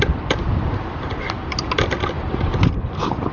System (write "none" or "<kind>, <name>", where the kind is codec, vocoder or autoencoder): none